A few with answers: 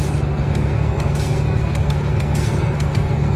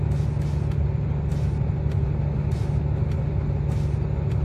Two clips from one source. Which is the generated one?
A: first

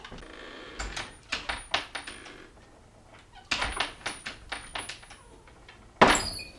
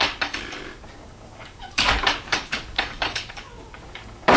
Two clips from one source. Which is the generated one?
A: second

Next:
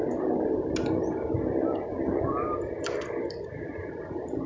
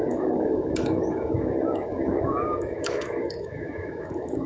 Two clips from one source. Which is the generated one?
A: second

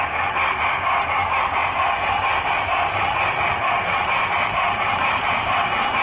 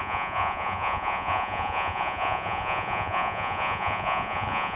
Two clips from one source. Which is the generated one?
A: second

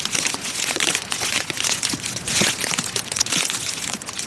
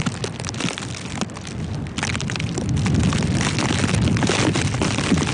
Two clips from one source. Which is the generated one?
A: first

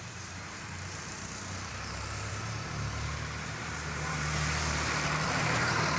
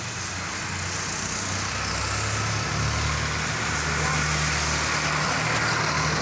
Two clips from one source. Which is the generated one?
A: first